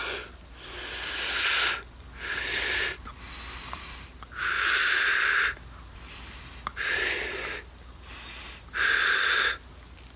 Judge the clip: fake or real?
real